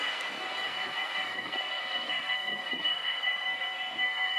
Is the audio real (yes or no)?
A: no